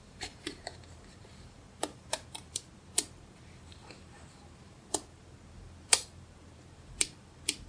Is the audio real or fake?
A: fake